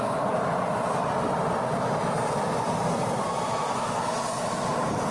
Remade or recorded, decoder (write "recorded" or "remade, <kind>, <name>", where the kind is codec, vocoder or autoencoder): recorded